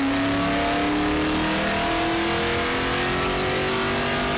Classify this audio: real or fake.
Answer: real